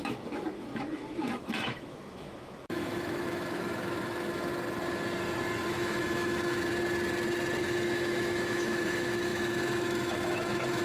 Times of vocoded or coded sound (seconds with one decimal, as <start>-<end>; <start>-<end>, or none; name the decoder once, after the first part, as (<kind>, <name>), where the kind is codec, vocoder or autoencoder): 0.0-4.5 (autoencoder, DAC-VAE); 5.7-6.7; 7.6-10.8